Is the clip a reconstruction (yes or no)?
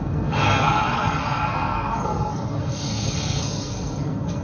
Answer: yes